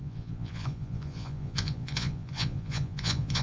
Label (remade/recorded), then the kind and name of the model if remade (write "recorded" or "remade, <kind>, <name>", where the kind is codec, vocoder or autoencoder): remade, vocoder, Vocos